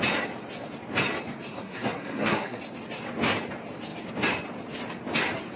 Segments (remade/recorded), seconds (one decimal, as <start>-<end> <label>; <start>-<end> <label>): 0.0-1.5 recorded; 1.5-2.6 remade; 2.6-5.6 recorded